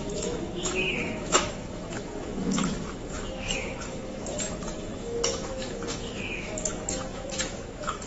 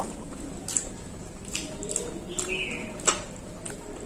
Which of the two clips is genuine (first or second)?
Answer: second